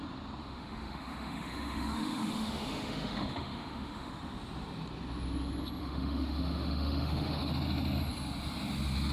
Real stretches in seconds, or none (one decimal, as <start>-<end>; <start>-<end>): 0.0-0.4; 4.1-5.8; 7.5-9.1